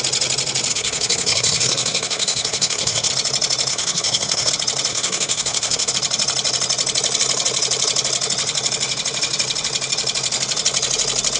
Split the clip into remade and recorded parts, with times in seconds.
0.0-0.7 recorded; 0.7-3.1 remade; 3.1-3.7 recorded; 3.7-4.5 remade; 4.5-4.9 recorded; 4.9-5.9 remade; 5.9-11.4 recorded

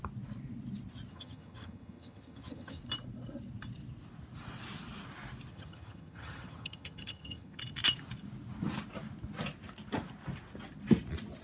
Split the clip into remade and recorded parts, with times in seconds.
0.0-1.1 recorded; 1.1-2.8 remade; 2.8-5.5 recorded; 5.5-7.6 remade; 7.6-11.4 recorded

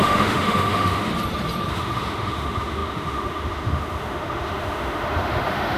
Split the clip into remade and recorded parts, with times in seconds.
0.0-1.1 remade; 1.1-1.7 recorded; 1.7-5.8 remade

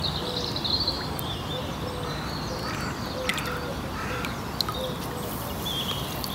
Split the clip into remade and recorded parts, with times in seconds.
0.0-6.3 recorded

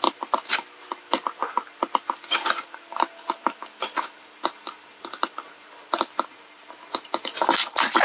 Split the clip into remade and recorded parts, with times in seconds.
0.0-8.0 recorded

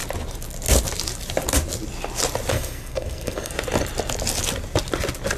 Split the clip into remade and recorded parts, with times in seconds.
0.0-2.5 recorded; 2.5-3.5 remade; 3.5-5.4 recorded